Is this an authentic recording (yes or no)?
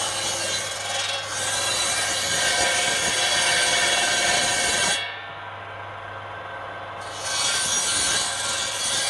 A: yes